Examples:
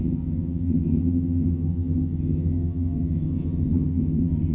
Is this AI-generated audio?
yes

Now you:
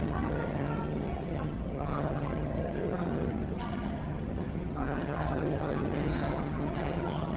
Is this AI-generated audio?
yes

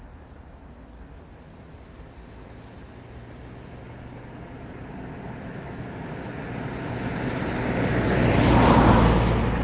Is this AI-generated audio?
no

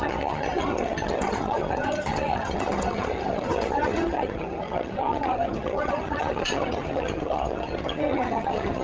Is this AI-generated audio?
yes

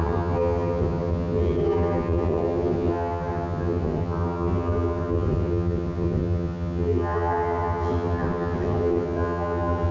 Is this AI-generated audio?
yes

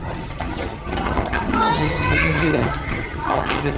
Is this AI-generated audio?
yes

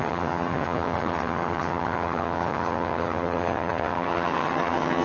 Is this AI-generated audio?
yes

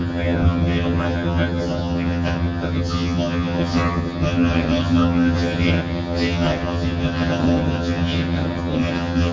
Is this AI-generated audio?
yes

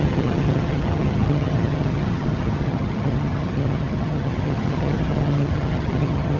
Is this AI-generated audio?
yes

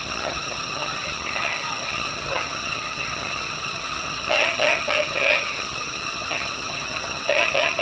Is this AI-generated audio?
yes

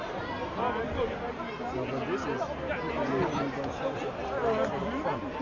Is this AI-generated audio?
no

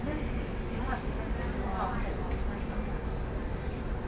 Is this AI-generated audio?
no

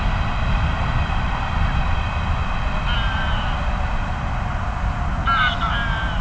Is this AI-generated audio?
no